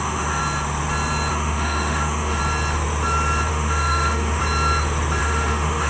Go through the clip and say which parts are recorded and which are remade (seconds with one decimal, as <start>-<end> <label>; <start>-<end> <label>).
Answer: 0.0-0.4 remade; 0.4-1.3 recorded; 1.3-2.4 remade; 2.4-3.5 recorded; 3.5-4.4 remade; 4.4-5.2 recorded; 5.2-5.9 remade